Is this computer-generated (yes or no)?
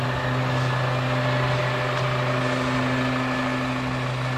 no